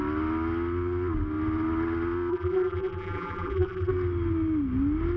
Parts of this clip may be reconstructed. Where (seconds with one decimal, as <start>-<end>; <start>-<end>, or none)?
2.3-3.9

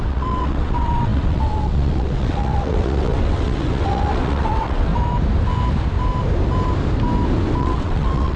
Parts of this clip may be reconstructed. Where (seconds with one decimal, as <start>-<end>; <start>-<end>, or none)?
0.0-4.9; 7.6-8.4

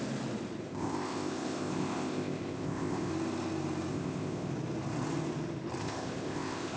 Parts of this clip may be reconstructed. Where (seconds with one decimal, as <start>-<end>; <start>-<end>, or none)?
0.6-3.1; 3.9-4.5; 5.8-6.8

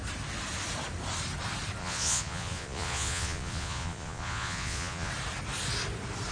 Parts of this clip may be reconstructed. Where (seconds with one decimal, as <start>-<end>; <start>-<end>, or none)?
1.8-5.1

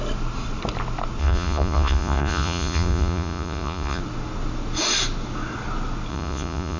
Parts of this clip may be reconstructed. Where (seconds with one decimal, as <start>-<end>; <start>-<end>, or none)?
1.2-4.0; 6.1-6.8

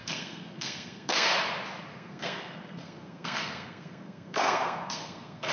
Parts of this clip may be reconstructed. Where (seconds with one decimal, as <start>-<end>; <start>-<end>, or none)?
0.0-1.3; 1.9-5.5

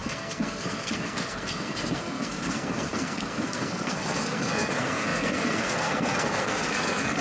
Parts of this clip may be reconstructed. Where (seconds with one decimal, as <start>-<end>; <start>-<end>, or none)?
0.0-7.2